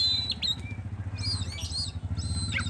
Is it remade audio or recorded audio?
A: recorded